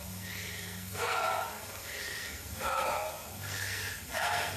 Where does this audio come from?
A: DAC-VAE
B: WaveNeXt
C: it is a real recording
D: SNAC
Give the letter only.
D